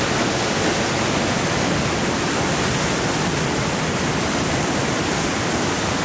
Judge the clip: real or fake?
real